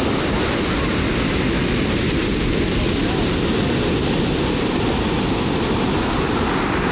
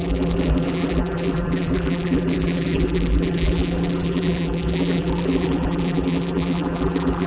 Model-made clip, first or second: second